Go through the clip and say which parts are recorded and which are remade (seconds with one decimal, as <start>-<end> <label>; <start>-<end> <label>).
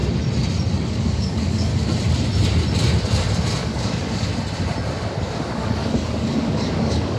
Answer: 0.0-0.9 recorded; 0.9-1.7 remade; 1.7-3.6 recorded; 3.6-4.3 remade; 4.3-5.2 recorded; 5.2-7.2 remade